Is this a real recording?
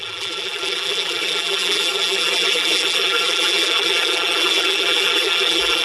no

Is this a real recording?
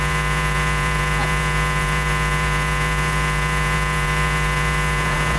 no